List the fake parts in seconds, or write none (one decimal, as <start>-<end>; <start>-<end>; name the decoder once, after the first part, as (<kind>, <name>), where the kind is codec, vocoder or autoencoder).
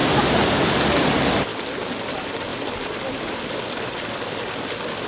0.9-1.5 (vocoder, BigVGAN v2); 2.0-2.5